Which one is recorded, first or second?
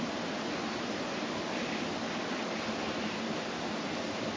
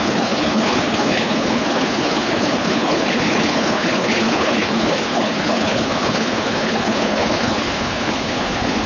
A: first